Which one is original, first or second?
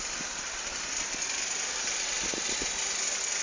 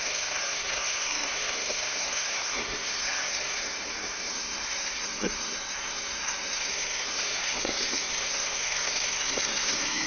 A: first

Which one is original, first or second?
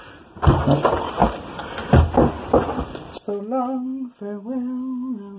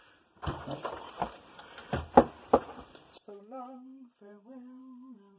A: first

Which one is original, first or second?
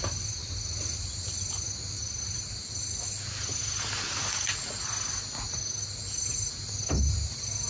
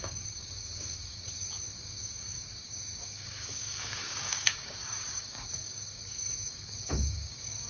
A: first